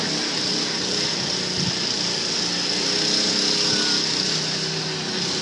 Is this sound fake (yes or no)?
no